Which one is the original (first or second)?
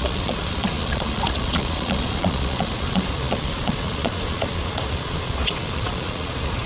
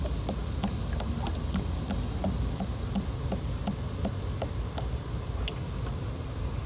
second